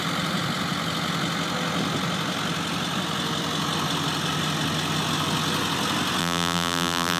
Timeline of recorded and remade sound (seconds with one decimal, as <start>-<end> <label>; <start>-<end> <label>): 0.0-6.2 recorded; 6.2-7.2 remade